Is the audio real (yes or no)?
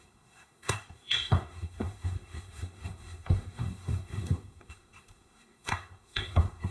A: no